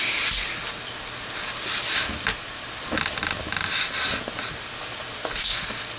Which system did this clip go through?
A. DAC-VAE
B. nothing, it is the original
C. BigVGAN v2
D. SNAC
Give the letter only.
B